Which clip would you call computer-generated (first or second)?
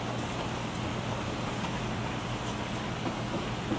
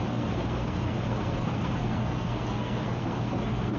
second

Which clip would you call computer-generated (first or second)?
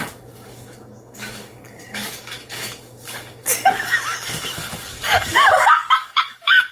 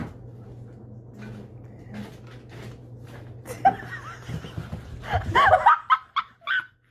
first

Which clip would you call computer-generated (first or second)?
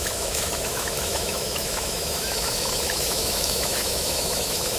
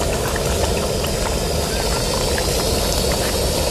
first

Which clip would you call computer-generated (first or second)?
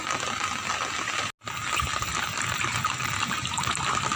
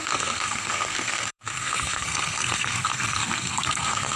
second